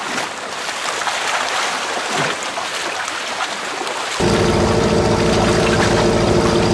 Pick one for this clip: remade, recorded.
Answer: recorded